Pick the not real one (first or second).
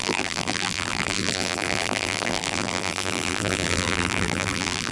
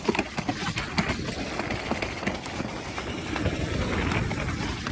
first